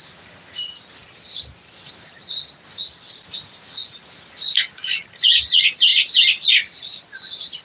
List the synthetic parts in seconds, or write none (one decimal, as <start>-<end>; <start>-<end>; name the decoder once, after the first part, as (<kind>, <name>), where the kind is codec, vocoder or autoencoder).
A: none